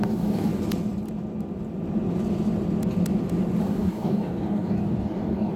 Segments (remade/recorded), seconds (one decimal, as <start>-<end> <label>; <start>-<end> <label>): 0.0-0.5 remade; 0.5-3.6 recorded; 3.6-5.6 remade